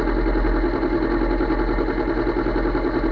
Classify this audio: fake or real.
real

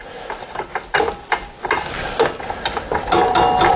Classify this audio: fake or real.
real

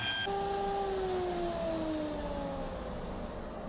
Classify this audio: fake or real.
real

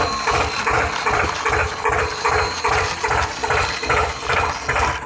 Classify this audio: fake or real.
fake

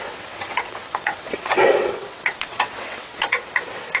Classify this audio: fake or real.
fake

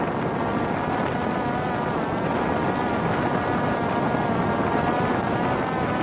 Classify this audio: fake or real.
real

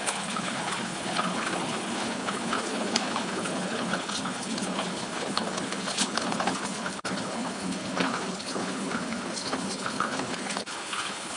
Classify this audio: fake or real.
fake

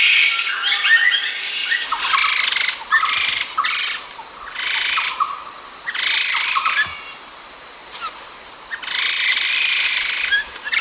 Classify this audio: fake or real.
real